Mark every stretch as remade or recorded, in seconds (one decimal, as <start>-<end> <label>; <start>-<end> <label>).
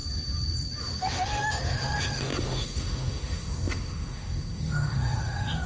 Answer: 0.0-0.8 recorded; 0.8-5.7 remade